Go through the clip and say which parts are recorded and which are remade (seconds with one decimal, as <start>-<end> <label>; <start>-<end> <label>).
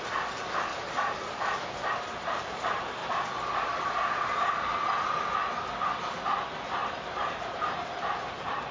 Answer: 0.0-0.7 recorded; 0.7-2.6 remade; 2.6-7.2 recorded; 7.2-8.7 remade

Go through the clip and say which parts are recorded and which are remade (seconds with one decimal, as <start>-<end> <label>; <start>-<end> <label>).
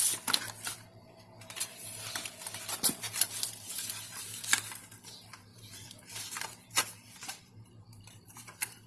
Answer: 0.0-5.5 recorded; 5.5-8.9 remade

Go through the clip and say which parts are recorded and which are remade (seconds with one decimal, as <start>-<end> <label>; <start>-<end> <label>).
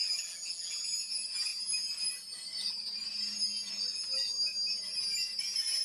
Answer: 0.0-0.8 remade; 0.8-5.8 recorded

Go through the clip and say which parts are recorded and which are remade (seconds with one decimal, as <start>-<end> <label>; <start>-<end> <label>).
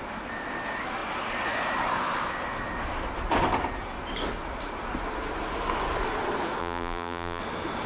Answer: 0.0-6.6 recorded; 6.6-7.4 remade; 7.4-7.9 recorded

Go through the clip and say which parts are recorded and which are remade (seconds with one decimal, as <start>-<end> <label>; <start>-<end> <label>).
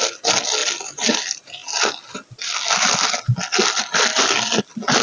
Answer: 0.0-1.6 remade; 1.6-4.6 recorded; 4.6-5.0 remade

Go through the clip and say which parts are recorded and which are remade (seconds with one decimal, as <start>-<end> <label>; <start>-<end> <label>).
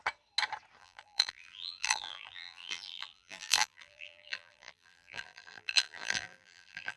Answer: 0.0-0.8 recorded; 0.8-7.0 remade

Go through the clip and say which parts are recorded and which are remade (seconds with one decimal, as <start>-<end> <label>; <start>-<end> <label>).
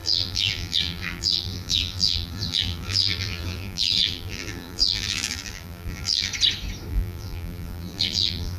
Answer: 0.0-6.3 remade; 6.3-6.9 recorded; 6.9-8.6 remade